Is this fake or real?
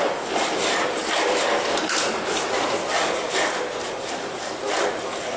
real